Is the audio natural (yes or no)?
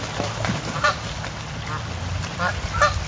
yes